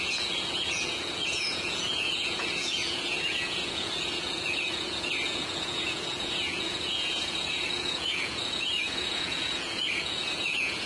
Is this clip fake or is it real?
fake